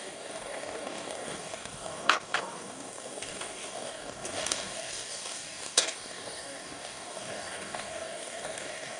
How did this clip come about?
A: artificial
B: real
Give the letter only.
A